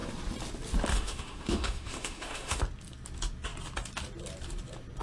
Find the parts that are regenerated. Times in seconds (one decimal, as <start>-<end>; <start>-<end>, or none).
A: 0.9-2.6